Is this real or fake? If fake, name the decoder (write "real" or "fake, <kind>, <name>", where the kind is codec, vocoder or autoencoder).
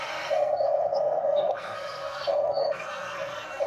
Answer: fake, codec, SNAC